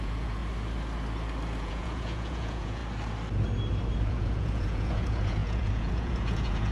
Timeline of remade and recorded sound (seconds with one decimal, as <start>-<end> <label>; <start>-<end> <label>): 0.0-0.4 remade; 0.4-1.6 recorded; 1.6-2.8 remade; 2.8-4.1 recorded; 4.1-6.7 remade